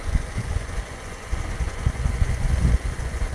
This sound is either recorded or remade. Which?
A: remade